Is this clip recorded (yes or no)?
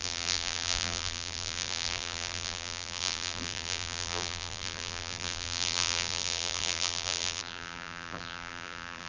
no